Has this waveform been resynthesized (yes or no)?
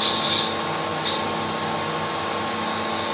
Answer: no